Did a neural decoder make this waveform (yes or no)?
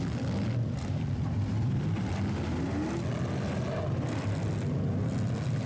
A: no